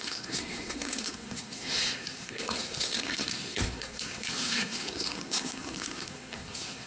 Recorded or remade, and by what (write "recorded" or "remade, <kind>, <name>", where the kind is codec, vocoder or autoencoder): remade, codec, SNAC